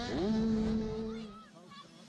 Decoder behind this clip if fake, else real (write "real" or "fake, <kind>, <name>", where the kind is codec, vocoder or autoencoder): real